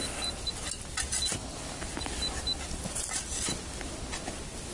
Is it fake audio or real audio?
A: real